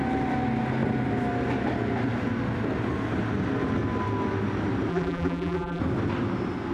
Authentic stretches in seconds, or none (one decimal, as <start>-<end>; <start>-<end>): 0.0-4.9; 5.8-6.7